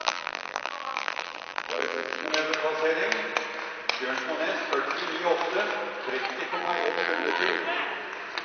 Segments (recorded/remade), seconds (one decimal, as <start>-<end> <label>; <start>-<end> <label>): 0.0-2.3 remade; 2.3-6.6 recorded; 6.6-7.6 remade; 7.6-8.4 recorded